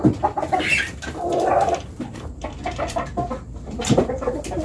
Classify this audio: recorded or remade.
remade